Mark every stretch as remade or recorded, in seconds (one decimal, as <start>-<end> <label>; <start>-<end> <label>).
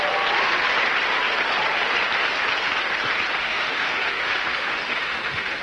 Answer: 0.0-3.4 recorded; 3.4-5.6 remade